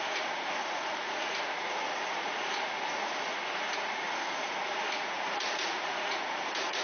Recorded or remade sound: remade